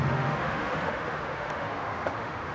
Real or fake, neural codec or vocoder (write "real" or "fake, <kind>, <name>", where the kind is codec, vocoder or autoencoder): fake, autoencoder, DAC-VAE